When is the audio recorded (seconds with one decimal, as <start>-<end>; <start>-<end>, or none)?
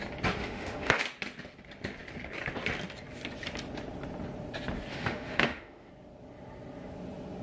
0.0-0.4; 1.0-4.9; 5.9-7.4